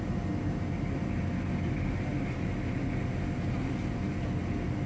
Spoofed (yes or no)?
no